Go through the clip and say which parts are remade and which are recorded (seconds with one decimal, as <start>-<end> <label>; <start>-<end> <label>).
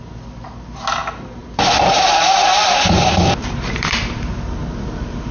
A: 0.0-1.4 recorded; 1.4-4.6 remade; 4.6-5.3 recorded